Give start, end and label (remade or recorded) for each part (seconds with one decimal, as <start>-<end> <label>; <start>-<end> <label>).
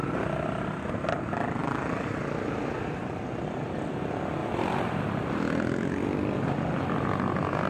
0.0-0.9 remade; 0.9-4.4 recorded; 4.4-5.0 remade; 5.0-7.7 recorded